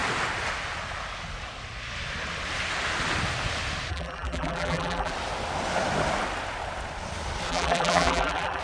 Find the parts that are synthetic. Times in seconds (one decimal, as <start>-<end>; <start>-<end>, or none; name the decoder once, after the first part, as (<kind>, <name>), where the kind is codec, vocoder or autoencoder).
3.9-5.1 (vocoder, BigVGAN v2); 7.5-8.6